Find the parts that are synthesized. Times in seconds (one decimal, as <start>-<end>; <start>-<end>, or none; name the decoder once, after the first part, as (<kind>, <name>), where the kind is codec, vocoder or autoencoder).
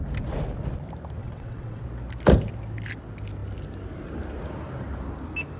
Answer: 1.2-1.8 (vocoder, WaveNeXt)